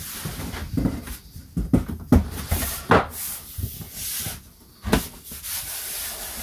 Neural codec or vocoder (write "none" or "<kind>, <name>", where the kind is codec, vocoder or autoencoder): none